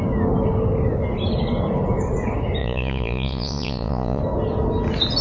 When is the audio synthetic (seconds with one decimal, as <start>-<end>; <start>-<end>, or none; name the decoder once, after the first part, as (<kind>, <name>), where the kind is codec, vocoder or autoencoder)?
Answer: 2.6-4.2 (vocoder, Vocos)